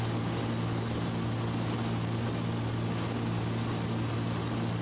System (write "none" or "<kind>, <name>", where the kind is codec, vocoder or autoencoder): none